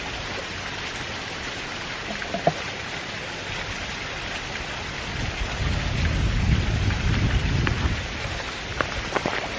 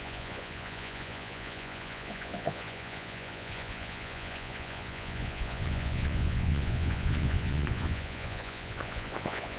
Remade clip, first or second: second